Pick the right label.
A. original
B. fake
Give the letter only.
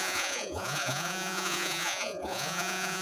B